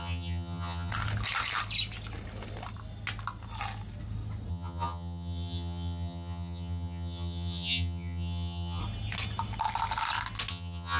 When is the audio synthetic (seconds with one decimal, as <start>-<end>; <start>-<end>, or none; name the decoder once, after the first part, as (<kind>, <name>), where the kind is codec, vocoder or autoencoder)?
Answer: 0.0-0.9 (vocoder, HiFi-GAN); 4.5-8.8; 10.5-11.0